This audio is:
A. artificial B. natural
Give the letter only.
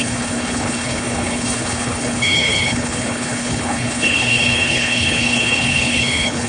A